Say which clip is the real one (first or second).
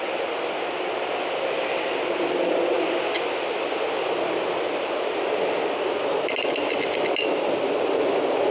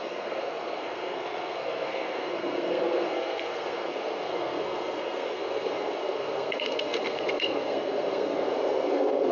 first